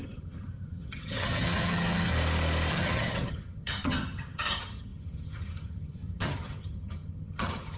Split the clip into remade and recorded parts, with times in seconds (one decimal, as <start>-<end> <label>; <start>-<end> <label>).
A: 0.0-2.1 remade; 2.1-2.7 recorded; 2.7-7.8 remade